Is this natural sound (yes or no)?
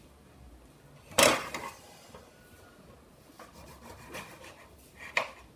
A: yes